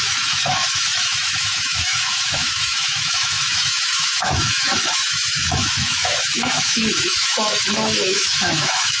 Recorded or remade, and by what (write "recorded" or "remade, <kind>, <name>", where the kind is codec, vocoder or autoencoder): remade, autoencoder, DAC-VAE